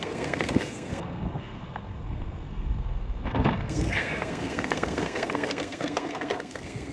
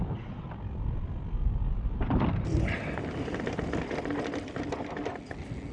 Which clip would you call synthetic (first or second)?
first